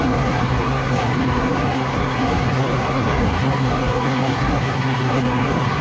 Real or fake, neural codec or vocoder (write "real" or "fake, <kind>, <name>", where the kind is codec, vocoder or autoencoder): fake, codec, SNAC